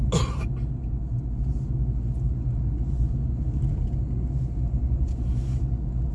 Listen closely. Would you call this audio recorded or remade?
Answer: recorded